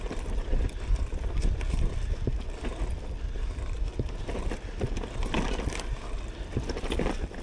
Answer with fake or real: real